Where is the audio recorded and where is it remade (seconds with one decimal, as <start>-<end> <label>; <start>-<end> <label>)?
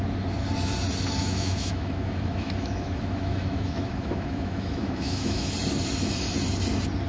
0.0-1.2 recorded; 1.2-5.5 remade; 5.5-7.1 recorded